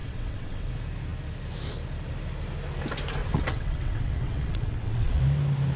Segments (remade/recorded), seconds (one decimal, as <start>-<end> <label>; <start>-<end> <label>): 0.0-0.7 remade; 0.7-3.2 recorded; 3.2-5.2 remade; 5.2-5.8 recorded